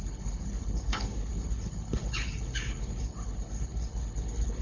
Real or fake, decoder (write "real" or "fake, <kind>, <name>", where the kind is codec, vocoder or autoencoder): fake, codec, HILCodec